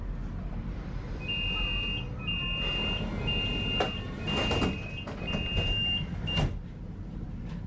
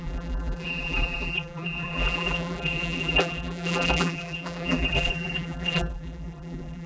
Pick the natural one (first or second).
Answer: first